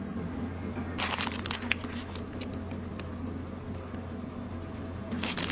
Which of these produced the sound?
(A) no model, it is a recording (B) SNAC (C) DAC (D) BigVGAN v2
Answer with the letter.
A